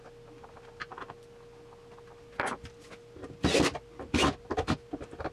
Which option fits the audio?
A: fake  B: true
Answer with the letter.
B